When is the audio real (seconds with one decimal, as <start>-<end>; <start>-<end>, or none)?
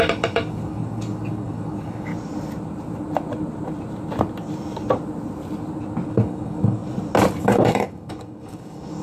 2.1-6.1; 6.8-7.4